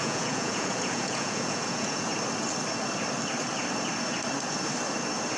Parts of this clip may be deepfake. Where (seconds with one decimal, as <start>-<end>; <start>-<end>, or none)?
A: 0.0-2.1